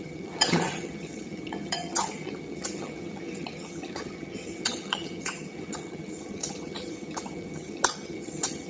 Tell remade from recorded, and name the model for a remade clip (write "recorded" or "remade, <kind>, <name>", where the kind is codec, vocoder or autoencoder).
remade, vocoder, HiFi-GAN